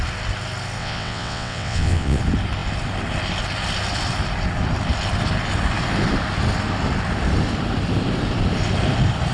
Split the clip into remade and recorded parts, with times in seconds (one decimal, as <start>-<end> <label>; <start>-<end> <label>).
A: 0.0-0.8 recorded; 0.8-2.2 remade; 2.2-9.3 recorded